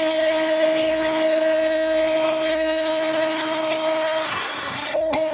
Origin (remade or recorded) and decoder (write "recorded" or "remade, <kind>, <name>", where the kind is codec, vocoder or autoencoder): remade, codec, SNAC